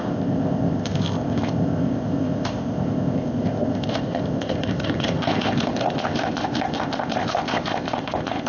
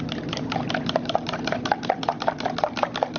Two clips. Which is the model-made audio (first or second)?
first